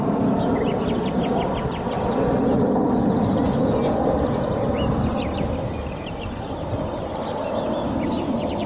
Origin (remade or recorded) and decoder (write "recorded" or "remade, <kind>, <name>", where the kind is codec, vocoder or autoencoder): recorded